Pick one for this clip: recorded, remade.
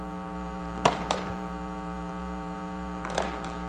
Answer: remade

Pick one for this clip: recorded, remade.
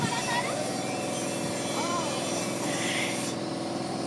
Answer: remade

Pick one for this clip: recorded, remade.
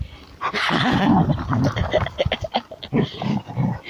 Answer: recorded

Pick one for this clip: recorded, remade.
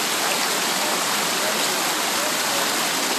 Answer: recorded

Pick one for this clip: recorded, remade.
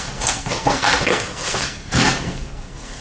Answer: remade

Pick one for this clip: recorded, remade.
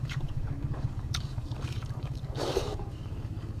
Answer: remade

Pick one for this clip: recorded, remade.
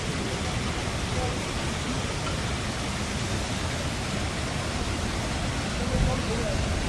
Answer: recorded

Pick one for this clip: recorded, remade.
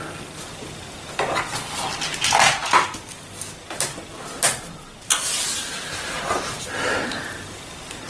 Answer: recorded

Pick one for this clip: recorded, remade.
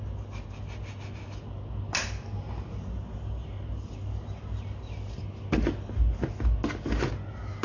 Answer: recorded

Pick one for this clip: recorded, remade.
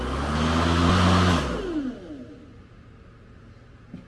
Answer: recorded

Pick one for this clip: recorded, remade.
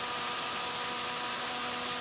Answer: recorded